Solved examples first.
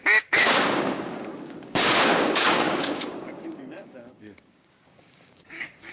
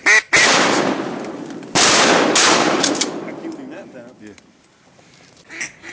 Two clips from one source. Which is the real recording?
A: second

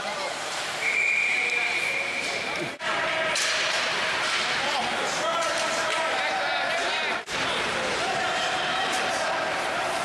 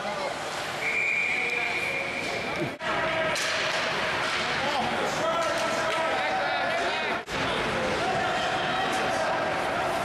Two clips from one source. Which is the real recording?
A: second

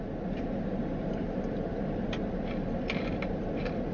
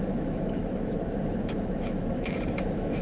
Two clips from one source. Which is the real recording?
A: first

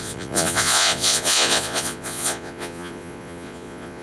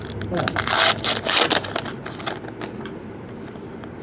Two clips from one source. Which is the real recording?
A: second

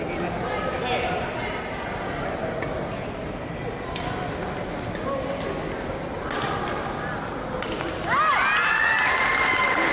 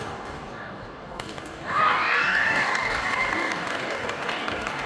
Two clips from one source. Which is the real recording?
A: first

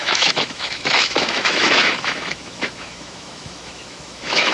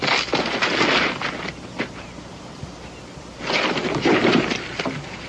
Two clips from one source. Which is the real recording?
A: second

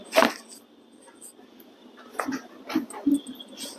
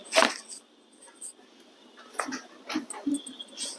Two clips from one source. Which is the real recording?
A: second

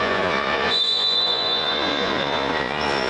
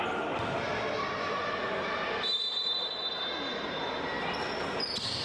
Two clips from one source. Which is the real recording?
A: second